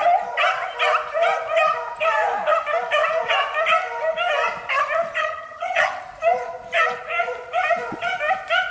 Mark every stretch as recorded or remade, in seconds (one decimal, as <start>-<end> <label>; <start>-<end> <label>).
0.0-5.2 recorded; 5.2-6.0 remade; 6.0-8.7 recorded